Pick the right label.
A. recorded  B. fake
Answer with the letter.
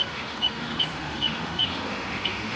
B